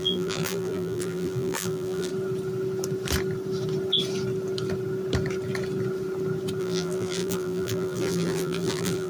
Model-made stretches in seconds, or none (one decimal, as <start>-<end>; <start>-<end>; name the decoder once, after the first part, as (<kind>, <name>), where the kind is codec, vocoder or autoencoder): 0.0-2.1 (vocoder, BigVGAN v2); 6.6-9.1